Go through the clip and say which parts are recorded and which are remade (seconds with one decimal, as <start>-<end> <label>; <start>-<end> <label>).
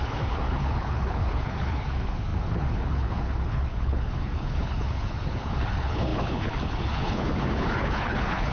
0.0-8.5 remade